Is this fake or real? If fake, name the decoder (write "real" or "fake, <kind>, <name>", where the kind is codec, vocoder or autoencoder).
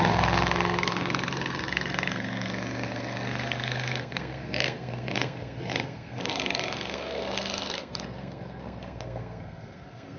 fake, codec, SNAC